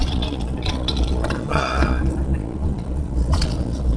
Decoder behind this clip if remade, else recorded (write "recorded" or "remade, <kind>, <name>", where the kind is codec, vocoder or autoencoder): remade, vocoder, Vocos